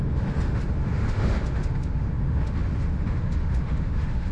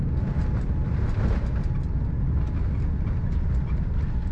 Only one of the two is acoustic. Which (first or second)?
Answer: second